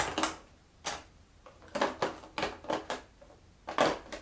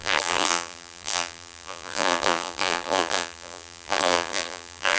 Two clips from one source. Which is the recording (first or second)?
first